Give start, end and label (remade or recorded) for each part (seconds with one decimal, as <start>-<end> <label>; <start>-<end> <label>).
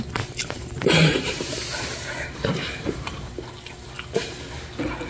0.0-0.4 recorded; 0.4-3.5 remade; 3.5-5.1 recorded